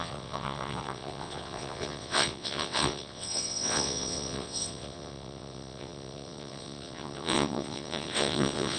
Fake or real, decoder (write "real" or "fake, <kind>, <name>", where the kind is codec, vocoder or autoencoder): fake, vocoder, WaveNeXt